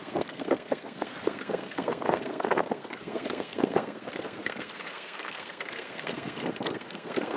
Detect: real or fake fake